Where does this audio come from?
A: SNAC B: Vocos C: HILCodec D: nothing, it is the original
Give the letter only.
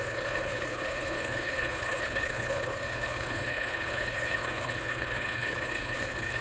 C